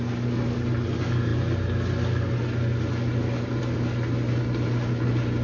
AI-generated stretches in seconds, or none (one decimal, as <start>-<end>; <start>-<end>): none